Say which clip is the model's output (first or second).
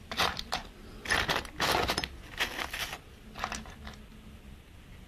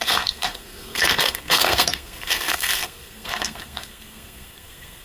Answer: second